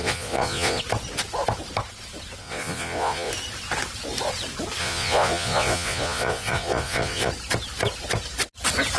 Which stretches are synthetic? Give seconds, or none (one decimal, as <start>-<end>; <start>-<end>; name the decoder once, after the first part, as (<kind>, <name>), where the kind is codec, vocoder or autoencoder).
0.0-0.8 (vocoder, Vocos); 2.4-3.3; 4.8-7.3